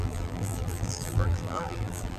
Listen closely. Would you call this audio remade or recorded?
remade